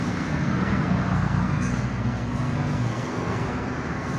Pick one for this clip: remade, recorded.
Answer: remade